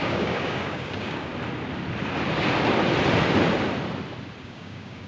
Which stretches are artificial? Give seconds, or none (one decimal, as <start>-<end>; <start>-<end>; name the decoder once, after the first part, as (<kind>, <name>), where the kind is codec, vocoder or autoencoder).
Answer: 0.0-1.3 (codec, DAC); 4.4-5.1